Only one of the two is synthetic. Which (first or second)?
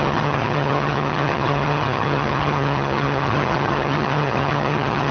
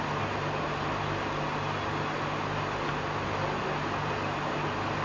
first